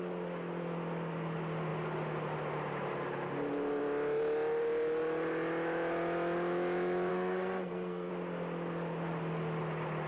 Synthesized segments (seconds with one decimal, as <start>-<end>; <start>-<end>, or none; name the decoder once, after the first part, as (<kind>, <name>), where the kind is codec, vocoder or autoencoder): 7.1-8.1 (codec, SNAC)